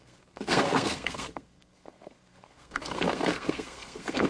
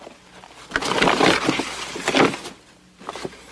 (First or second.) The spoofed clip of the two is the first